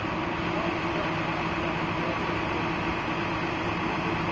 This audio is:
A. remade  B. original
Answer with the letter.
B